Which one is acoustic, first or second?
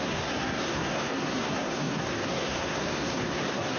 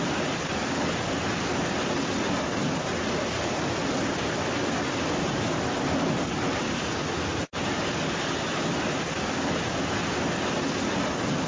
second